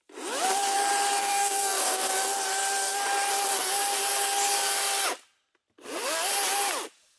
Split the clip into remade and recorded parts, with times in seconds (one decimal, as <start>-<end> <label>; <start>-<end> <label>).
0.0-1.2 recorded; 1.2-2.1 remade; 2.1-7.2 recorded